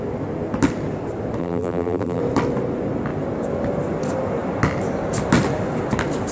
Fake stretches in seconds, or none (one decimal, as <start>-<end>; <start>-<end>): 1.4-2.2